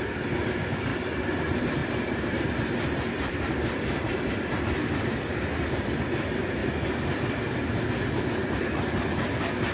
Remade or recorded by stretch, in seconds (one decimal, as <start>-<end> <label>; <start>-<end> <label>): 0.0-0.9 recorded; 0.9-1.4 remade; 1.4-1.8 recorded; 1.8-4.2 remade; 4.2-9.7 recorded